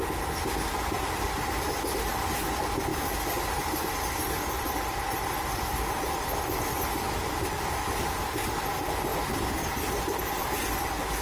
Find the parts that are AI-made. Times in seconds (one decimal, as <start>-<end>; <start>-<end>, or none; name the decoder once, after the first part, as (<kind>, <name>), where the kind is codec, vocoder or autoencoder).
none